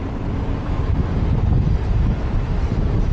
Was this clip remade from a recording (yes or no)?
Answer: no